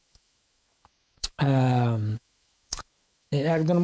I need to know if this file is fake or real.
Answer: fake